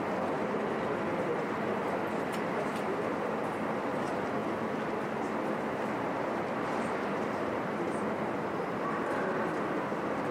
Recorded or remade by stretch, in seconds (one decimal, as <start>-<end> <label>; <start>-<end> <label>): 0.0-10.3 recorded